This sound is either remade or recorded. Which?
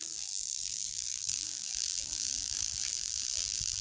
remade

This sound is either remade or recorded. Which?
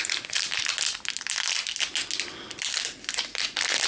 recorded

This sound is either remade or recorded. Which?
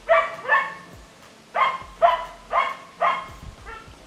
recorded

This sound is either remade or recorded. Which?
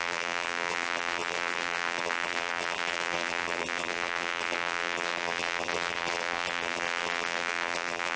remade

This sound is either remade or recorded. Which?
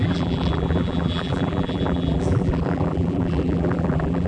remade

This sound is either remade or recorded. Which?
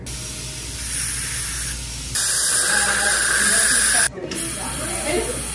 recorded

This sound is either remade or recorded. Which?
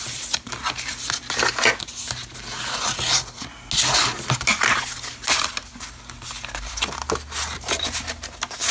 recorded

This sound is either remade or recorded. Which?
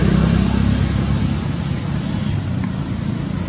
recorded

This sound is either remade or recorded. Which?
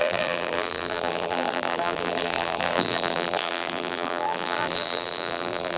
remade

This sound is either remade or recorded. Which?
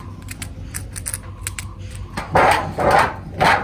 recorded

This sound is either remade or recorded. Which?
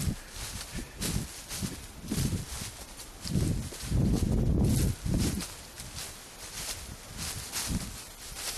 recorded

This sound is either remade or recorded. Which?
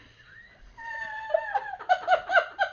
remade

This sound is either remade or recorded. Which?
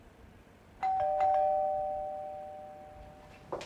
recorded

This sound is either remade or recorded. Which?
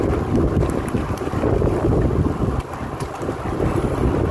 remade